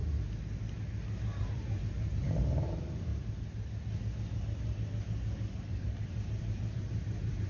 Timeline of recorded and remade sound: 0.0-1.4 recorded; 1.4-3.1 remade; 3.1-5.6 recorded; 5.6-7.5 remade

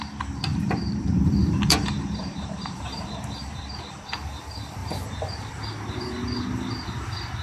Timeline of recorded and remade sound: 0.0-0.5 recorded; 0.5-4.0 remade; 4.0-4.8 recorded; 4.8-5.5 remade; 5.5-7.4 recorded

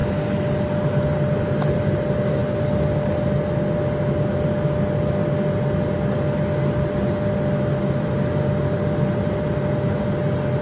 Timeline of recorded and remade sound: 0.0-10.6 recorded

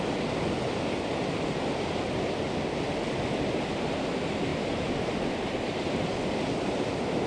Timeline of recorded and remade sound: 0.0-7.3 recorded

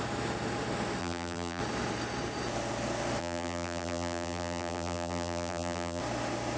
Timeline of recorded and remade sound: 0.0-1.0 recorded; 1.0-1.6 remade; 1.6-3.2 recorded; 3.2-6.0 remade; 6.0-6.6 recorded

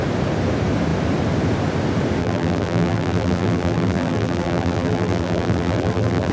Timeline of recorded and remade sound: 0.0-2.2 recorded; 2.2-6.3 remade

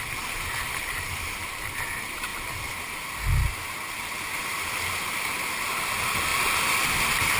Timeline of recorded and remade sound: 0.0-7.4 recorded

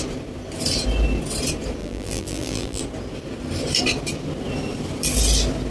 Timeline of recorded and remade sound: 0.0-1.8 recorded; 1.8-2.8 remade; 2.8-5.7 recorded